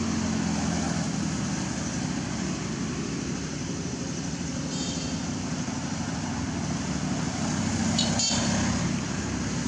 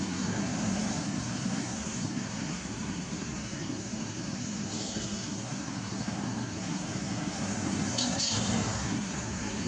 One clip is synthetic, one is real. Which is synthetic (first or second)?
second